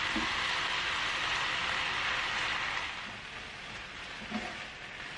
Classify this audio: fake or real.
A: real